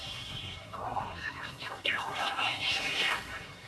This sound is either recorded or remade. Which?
remade